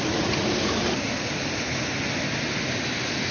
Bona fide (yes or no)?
yes